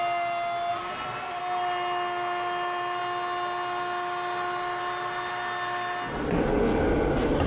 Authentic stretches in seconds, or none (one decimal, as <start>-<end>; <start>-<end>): 0.0-0.7; 1.4-7.5